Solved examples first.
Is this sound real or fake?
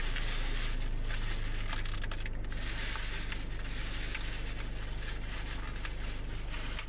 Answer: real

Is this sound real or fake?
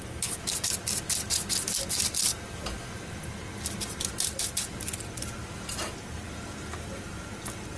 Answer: real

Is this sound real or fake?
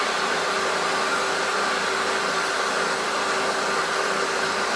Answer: real